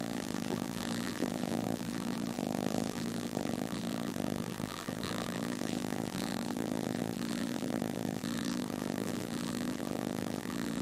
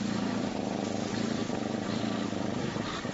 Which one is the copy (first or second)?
first